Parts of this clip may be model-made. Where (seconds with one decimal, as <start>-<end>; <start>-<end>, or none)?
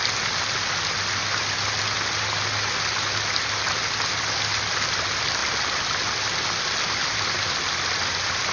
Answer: none